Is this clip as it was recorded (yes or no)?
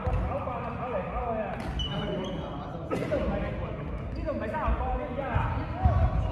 yes